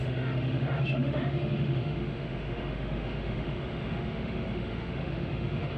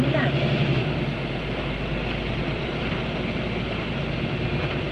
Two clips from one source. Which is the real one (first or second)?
second